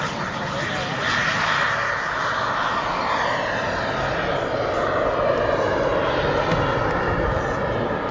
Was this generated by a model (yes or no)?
no